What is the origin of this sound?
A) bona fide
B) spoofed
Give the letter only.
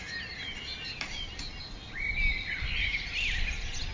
A